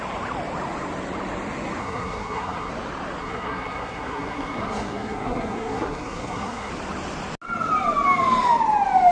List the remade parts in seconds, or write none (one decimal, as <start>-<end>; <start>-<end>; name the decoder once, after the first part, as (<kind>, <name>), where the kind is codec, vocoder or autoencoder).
1.8-2.7 (codec, SNAC); 3.2-6.7